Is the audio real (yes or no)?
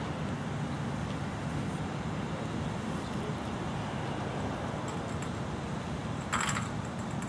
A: yes